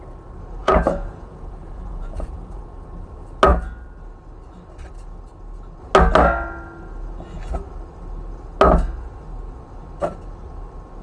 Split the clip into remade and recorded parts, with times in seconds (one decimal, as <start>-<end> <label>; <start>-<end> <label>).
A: 0.0-0.6 recorded; 0.6-2.6 remade; 2.6-11.0 recorded